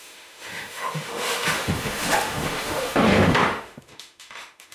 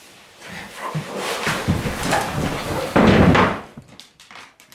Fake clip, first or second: first